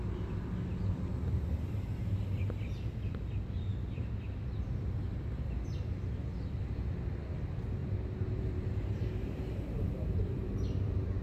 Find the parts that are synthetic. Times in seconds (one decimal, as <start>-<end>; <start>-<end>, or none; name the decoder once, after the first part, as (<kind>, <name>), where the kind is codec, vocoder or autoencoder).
7.8-11.2 (vocoder, BigVGAN v2)